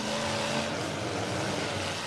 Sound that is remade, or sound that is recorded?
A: recorded